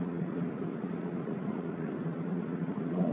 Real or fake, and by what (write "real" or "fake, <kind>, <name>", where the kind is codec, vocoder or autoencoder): fake, vocoder, Vocos